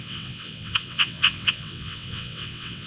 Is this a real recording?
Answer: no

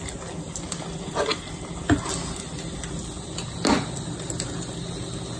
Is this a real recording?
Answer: yes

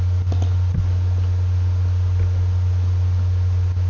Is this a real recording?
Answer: yes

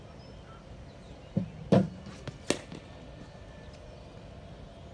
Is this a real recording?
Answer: yes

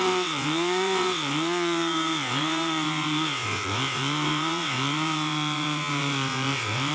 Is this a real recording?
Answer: no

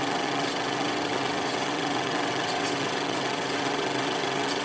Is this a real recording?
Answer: no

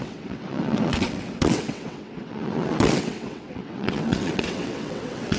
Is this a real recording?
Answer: no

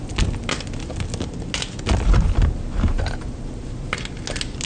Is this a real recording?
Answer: yes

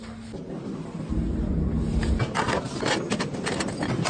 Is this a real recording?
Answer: yes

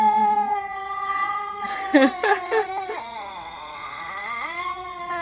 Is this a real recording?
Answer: no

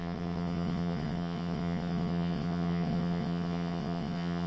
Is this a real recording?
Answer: no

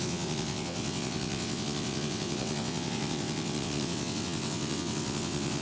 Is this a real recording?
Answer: no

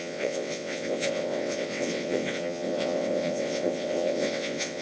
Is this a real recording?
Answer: no